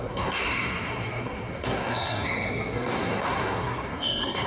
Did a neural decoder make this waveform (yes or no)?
yes